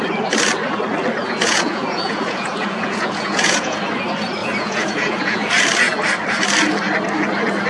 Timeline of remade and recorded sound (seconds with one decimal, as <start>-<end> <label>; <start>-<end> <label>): 0.0-1.2 recorded; 1.2-3.8 remade; 3.8-4.4 recorded; 4.4-5.5 remade; 5.5-7.7 recorded